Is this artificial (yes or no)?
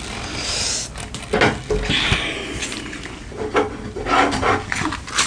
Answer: no